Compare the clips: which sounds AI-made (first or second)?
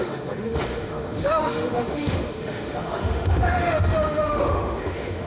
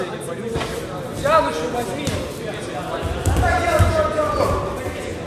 first